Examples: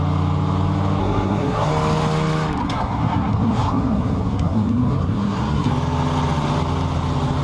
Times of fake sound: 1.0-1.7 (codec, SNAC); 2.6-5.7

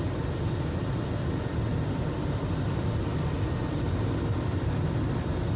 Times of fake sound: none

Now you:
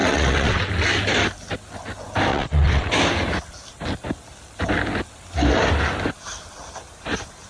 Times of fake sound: 0.0-0.7 (vocoder, WaveNeXt); 2.3-2.9